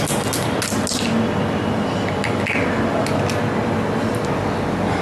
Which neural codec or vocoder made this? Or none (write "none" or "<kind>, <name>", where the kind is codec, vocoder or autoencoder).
none